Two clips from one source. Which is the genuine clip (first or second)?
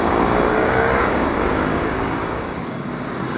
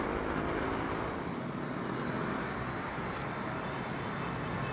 second